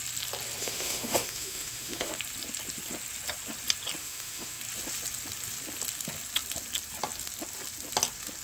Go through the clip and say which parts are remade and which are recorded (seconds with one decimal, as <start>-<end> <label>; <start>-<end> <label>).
0.0-0.6 recorded; 0.6-2.1 remade; 2.1-4.0 recorded; 4.0-4.6 remade; 4.6-8.4 recorded